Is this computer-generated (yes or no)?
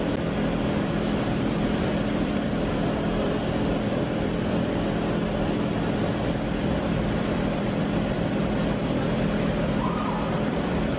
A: yes